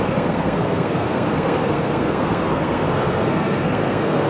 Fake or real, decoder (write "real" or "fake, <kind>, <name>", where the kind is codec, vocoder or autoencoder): fake, codec, SNAC